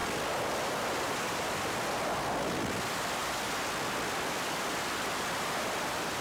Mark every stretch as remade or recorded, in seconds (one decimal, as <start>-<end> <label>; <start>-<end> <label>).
0.0-6.2 recorded